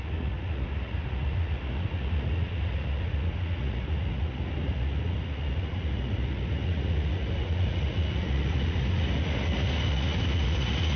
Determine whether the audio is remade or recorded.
remade